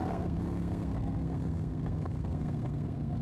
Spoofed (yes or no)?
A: yes